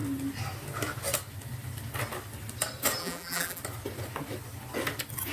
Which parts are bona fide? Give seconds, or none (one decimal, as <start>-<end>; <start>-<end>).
0.0-3.0; 3.6-5.3